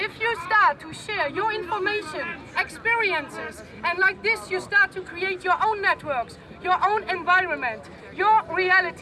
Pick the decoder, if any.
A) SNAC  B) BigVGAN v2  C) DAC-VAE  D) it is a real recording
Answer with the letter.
D